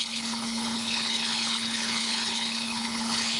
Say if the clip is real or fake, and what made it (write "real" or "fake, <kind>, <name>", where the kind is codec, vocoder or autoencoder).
fake, codec, HILCodec